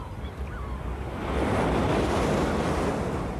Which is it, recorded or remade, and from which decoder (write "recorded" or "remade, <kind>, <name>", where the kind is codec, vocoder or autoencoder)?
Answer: recorded